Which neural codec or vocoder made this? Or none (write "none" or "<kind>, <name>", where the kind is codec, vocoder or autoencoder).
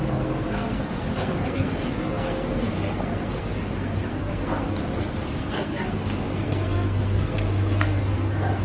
codec, SNAC